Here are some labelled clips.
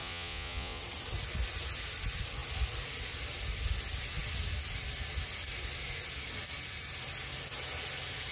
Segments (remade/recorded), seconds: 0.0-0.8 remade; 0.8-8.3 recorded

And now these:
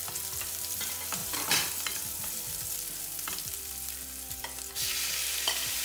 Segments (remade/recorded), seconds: 0.0-5.8 remade

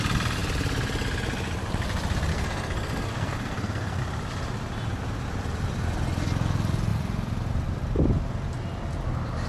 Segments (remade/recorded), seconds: 0.0-2.3 recorded; 2.3-4.0 remade; 4.0-9.5 recorded

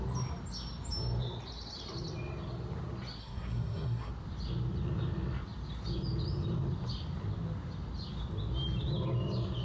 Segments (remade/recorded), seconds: 0.0-3.2 recorded; 3.2-4.1 remade; 4.1-9.6 recorded

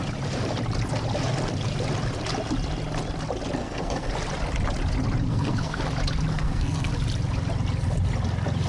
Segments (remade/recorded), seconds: 0.0-3.6 recorded; 3.6-4.1 remade; 4.1-5.3 recorded; 5.3-5.8 remade; 5.8-6.3 recorded; 6.3-6.9 remade; 6.9-8.7 recorded

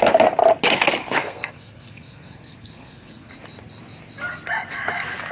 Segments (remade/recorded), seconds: 0.0-1.0 recorded; 1.0-3.3 remade; 3.3-5.3 recorded

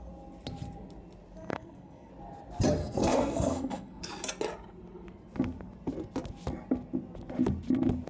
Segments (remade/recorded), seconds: 0.0-1.5 recorded; 1.5-2.1 remade; 2.1-2.8 recorded; 2.8-4.0 remade; 4.0-8.1 recorded

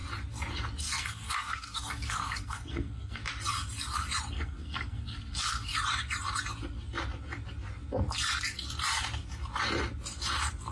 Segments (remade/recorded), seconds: 0.0-0.8 recorded; 0.8-3.2 remade; 3.2-4.3 recorded; 4.3-5.7 remade; 5.7-10.7 recorded